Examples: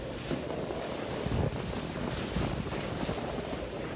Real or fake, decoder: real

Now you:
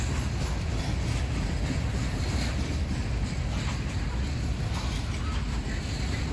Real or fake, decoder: real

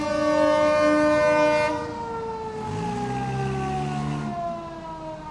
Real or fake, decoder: real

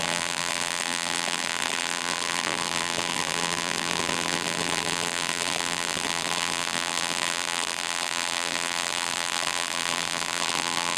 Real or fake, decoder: fake, vocoder, BigVGAN v2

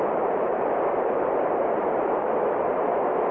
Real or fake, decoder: fake, vocoder, BigVGAN v2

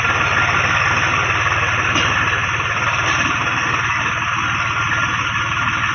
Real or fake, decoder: real